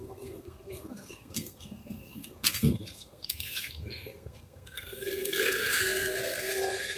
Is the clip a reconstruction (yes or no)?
yes